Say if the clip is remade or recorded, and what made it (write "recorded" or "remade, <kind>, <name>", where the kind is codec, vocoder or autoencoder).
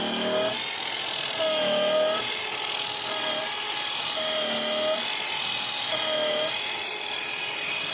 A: recorded